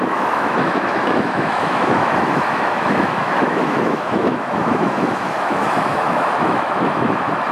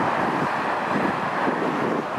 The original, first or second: second